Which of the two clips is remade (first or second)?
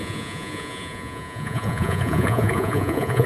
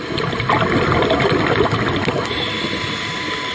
first